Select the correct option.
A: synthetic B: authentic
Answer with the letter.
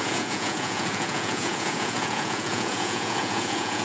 A